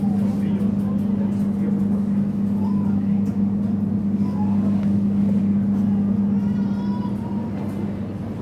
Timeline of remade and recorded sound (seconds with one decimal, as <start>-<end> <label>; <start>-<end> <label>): 0.0-1.8 recorded; 1.8-3.6 remade; 3.6-4.0 recorded; 4.0-5.4 remade; 5.4-8.4 recorded